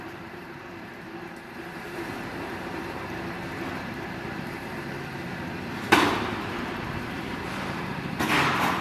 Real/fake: fake